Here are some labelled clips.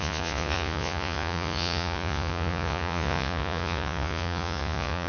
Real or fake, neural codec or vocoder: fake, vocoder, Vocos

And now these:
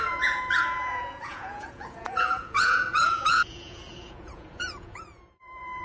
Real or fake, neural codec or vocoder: fake, vocoder, Vocos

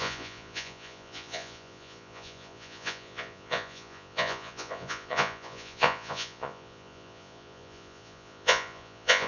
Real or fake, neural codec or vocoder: fake, vocoder, Vocos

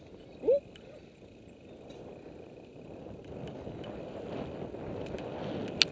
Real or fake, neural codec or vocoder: real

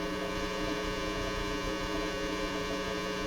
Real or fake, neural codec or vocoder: fake, vocoder, Vocos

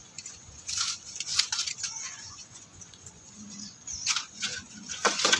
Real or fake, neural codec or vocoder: fake, vocoder, Vocos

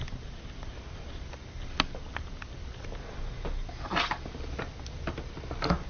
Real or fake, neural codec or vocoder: real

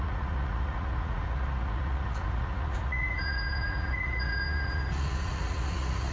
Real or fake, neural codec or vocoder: fake, vocoder, Vocos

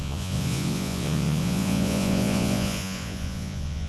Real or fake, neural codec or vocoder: fake, vocoder, Vocos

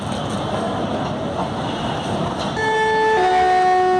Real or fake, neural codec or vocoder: real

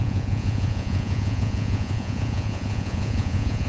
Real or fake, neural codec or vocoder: fake, vocoder, Vocos